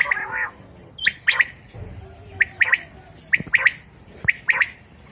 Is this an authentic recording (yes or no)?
yes